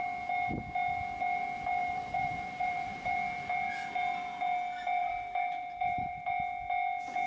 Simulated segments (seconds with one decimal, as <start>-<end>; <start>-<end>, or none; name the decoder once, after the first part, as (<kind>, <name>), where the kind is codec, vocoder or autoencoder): 1.8-3.1 (vocoder, BigVGAN v2); 5.0-6.3